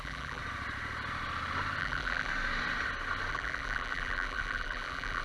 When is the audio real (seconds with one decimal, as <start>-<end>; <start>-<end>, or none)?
0.4-1.8; 2.3-3.3